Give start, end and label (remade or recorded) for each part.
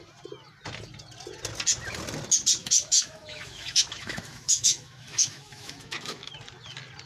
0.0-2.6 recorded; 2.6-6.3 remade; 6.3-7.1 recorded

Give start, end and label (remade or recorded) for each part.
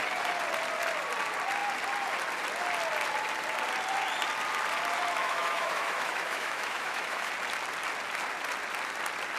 0.0-5.2 recorded; 5.2-7.3 remade; 7.3-9.4 recorded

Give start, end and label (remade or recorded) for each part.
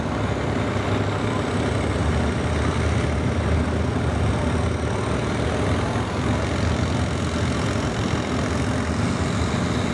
0.0-9.9 recorded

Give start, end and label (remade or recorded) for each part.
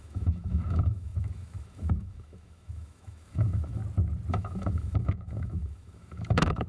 0.0-3.8 remade; 3.8-4.3 recorded; 4.3-6.7 remade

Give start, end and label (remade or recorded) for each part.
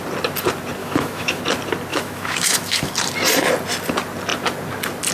0.0-0.8 recorded; 0.8-1.4 remade; 1.4-1.9 recorded; 1.9-2.9 remade; 2.9-5.1 recorded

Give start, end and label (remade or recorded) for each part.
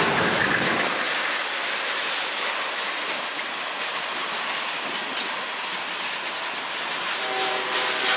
0.0-8.2 recorded